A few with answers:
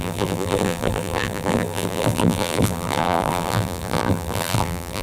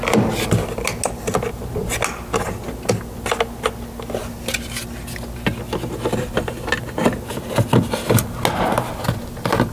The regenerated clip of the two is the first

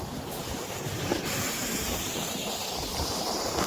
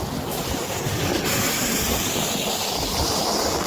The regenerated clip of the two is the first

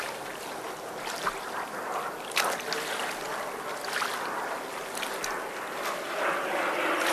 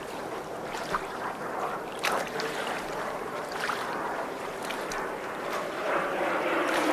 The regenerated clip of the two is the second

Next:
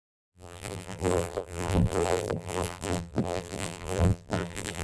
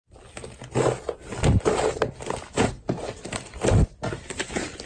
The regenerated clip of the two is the first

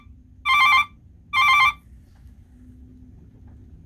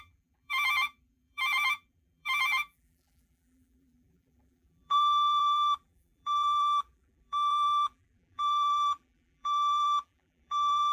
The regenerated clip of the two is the second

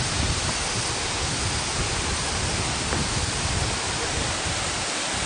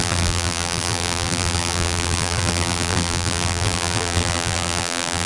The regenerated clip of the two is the second